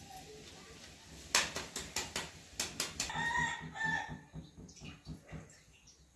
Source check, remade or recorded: recorded